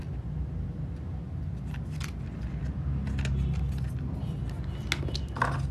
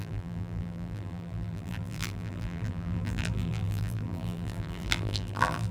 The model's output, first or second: second